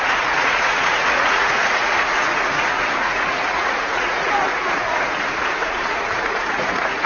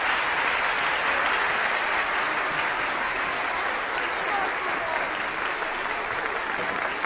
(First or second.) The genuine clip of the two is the second